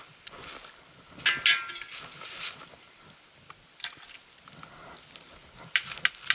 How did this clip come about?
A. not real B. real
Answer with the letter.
B